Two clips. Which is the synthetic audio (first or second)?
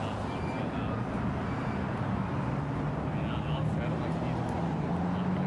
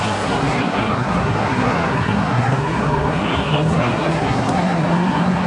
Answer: second